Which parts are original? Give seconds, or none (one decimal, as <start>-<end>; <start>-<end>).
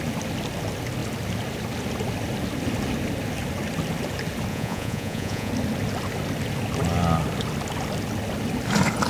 0.0-4.5; 5.5-9.1